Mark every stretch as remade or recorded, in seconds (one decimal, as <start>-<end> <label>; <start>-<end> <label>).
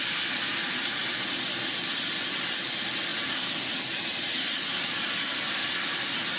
0.0-6.4 recorded